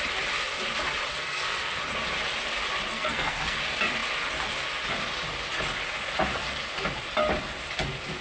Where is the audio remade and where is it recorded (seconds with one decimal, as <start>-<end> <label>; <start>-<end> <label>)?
0.0-1.1 recorded; 1.1-1.8 remade; 1.8-2.9 recorded; 2.9-3.6 remade; 3.6-8.2 recorded